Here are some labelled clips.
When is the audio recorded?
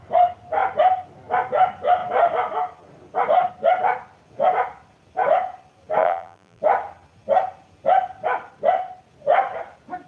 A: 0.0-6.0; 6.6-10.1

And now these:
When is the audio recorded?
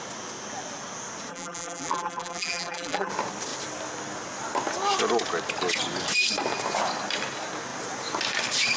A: 0.0-1.3; 3.1-8.8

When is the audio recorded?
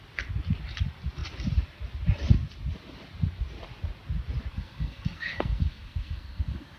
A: 0.0-4.5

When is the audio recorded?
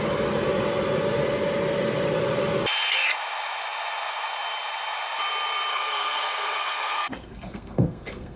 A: 0.0-5.7